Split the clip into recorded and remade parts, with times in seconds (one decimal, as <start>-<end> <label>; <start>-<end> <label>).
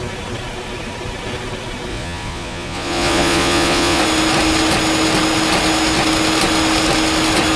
0.0-1.9 recorded; 1.9-4.0 remade; 4.0-7.6 recorded